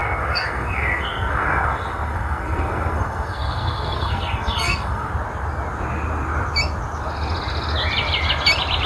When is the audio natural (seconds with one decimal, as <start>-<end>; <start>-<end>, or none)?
5.1-8.9